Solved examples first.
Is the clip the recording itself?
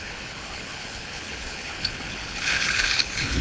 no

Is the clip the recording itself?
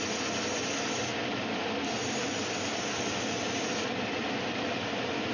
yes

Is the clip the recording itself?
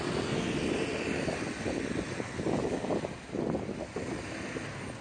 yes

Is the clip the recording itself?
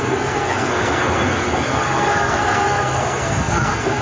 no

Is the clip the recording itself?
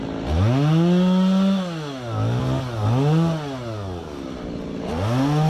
yes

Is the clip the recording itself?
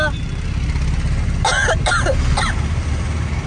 yes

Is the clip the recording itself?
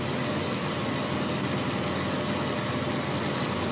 yes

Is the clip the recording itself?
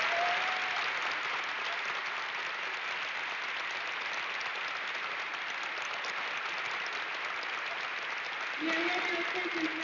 yes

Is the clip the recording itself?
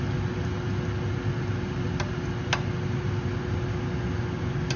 yes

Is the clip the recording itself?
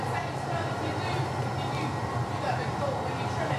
no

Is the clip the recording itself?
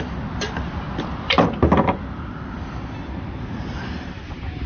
yes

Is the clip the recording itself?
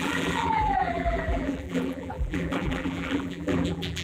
no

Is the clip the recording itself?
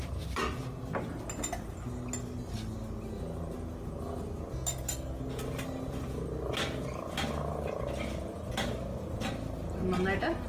yes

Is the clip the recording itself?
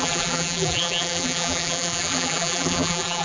no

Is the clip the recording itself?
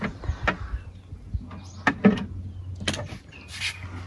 yes